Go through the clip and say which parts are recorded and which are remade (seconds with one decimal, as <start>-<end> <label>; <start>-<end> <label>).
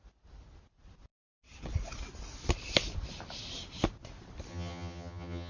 0.0-4.5 recorded; 4.5-5.5 remade